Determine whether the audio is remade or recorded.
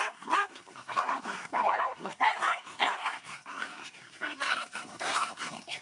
remade